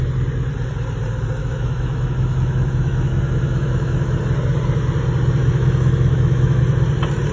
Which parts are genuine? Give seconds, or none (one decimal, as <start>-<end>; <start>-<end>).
0.0-1.4; 4.2-5.4; 6.6-7.3